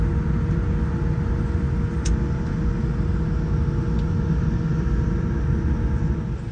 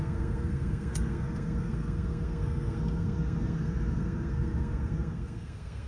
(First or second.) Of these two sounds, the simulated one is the second